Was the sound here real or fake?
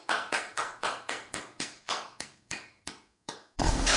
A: fake